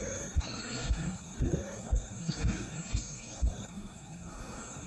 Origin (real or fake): fake